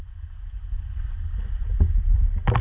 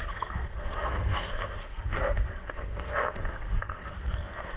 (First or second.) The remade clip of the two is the second